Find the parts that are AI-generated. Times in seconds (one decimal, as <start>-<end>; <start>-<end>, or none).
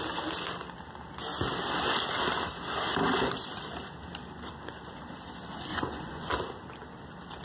5.7-6.3